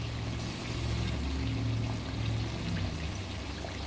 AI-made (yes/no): no